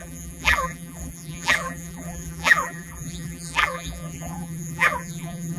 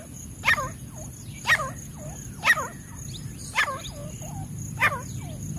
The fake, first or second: first